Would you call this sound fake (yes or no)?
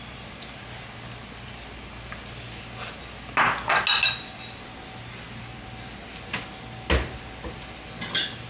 no